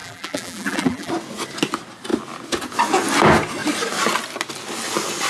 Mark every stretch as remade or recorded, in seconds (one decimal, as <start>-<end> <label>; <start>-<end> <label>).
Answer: 0.0-1.1 remade; 1.1-5.3 recorded